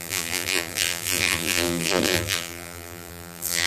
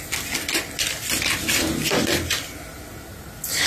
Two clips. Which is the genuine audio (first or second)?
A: second